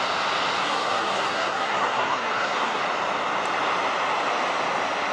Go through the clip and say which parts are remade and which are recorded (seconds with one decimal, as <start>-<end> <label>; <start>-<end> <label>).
0.0-0.6 recorded; 0.6-2.8 remade; 2.8-5.1 recorded